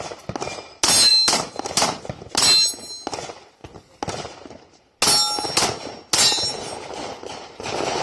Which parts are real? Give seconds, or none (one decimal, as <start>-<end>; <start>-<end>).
0.0-8.0